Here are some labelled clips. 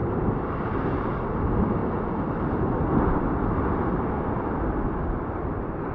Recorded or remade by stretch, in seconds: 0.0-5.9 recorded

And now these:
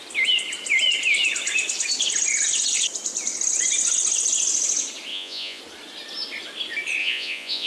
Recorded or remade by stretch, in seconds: 0.0-5.1 recorded; 5.1-5.6 remade; 5.6-7.0 recorded; 7.0-7.7 remade

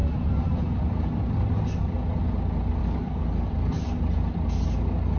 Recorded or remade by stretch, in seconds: 0.0-2.8 recorded; 2.8-3.5 remade; 3.5-5.2 recorded

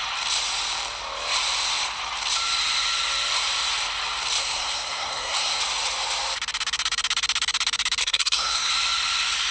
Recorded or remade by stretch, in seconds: 0.0-4.4 recorded; 4.4-5.6 remade; 5.6-8.0 recorded; 8.0-8.7 remade; 8.7-9.5 recorded

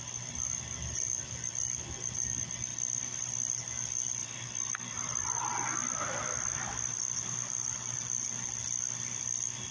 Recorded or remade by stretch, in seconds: 0.0-2.7 recorded; 2.7-3.5 remade; 3.5-4.2 recorded; 4.2-7.3 remade; 7.3-8.6 recorded; 8.6-9.7 remade

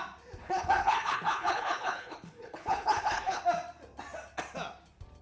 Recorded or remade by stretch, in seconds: 0.0-0.4 recorded; 0.4-3.4 remade; 3.4-5.2 recorded

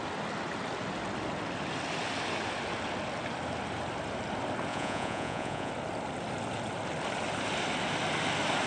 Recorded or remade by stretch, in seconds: 0.0-4.7 recorded; 4.7-5.7 remade; 5.7-8.7 recorded